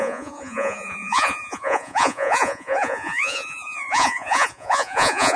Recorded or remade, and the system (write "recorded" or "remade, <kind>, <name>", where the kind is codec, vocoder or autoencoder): remade, vocoder, Vocos